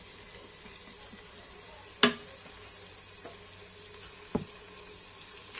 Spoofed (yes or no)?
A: no